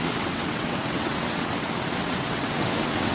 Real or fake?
fake